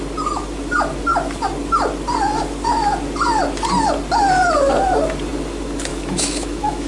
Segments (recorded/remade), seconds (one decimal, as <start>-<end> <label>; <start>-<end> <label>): 0.0-5.9 recorded; 5.9-6.9 remade